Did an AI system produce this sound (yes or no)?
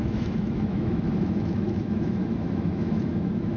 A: yes